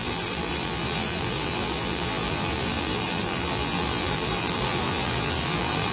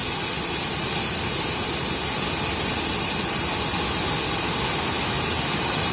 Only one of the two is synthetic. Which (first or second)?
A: first